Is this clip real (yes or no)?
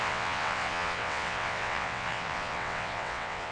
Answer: no